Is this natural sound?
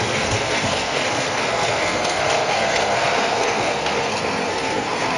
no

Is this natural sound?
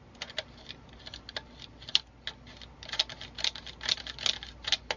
yes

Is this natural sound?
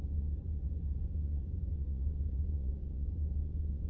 no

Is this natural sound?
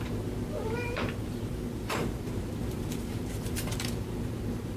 no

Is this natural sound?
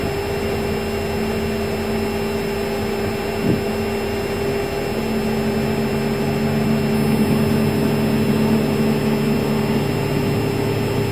yes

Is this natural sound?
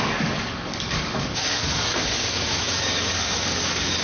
no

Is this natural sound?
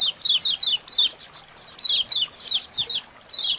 yes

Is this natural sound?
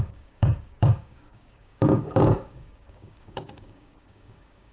no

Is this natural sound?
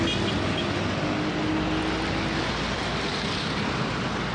yes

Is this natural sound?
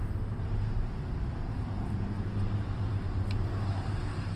no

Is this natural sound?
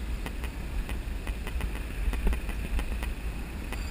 yes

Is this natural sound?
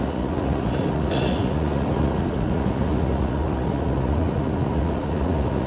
no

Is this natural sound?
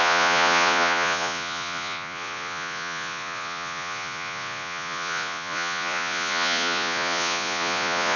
no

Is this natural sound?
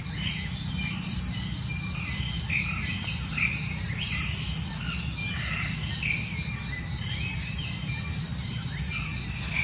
yes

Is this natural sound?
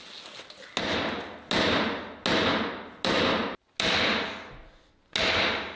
yes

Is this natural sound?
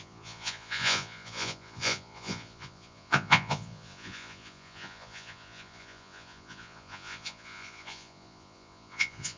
no